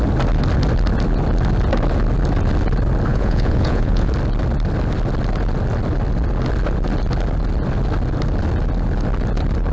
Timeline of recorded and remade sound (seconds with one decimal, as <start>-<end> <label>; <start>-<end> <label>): 0.0-3.1 recorded; 3.1-4.1 remade; 4.1-9.7 recorded